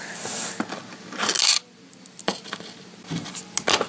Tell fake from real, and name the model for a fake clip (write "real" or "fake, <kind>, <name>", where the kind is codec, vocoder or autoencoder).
real